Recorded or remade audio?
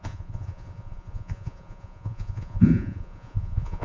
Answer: remade